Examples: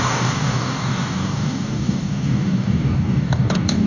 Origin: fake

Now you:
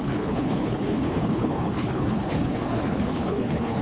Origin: fake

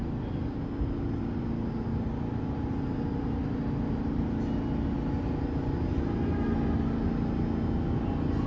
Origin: real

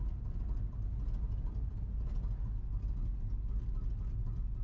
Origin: real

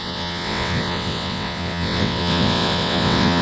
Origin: fake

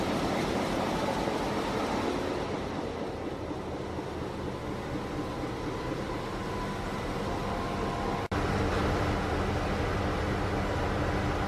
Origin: real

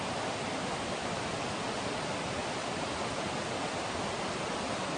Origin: real